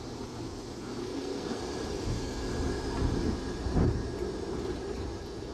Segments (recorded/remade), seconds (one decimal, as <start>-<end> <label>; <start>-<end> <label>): 0.0-1.0 recorded; 1.0-1.6 remade; 1.6-5.5 recorded